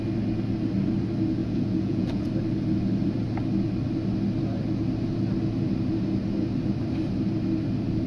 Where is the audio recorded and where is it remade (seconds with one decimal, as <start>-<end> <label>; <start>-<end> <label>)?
0.0-1.4 recorded; 1.4-2.3 remade; 2.3-8.1 recorded